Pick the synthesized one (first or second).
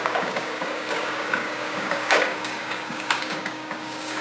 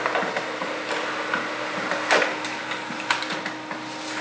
first